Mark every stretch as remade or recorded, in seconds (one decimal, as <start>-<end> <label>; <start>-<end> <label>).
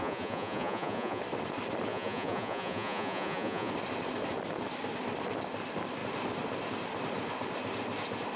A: 0.0-1.2 remade; 1.2-1.9 recorded; 1.9-3.7 remade; 3.7-8.4 recorded